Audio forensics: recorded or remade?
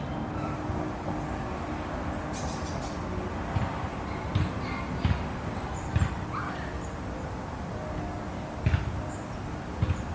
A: recorded